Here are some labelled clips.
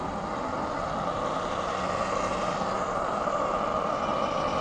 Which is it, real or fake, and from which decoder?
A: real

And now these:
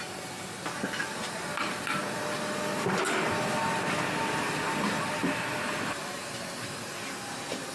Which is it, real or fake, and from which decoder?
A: real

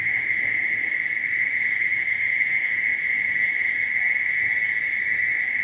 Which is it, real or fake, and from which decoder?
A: real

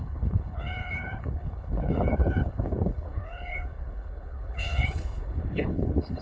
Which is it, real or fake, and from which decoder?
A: fake, codec, HILCodec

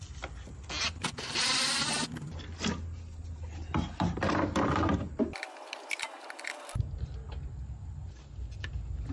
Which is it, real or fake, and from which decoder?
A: real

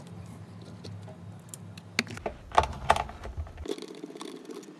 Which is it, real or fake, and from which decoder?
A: real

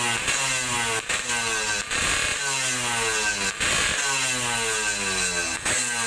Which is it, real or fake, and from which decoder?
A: real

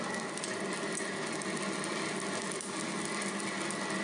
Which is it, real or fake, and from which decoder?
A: real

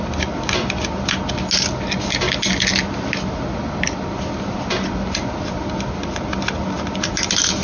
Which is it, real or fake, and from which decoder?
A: real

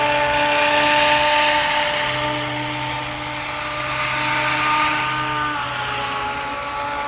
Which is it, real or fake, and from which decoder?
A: real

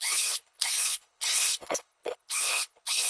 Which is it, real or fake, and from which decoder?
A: fake, codec, HILCodec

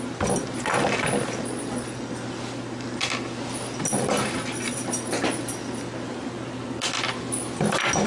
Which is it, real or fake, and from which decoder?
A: real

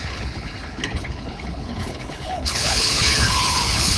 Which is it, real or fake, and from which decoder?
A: fake, codec, HILCodec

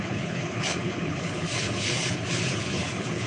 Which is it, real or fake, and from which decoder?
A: fake, codec, HILCodec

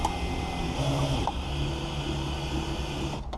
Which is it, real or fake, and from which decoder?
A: real